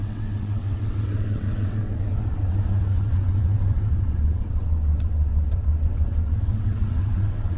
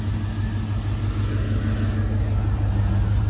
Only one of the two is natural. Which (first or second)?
second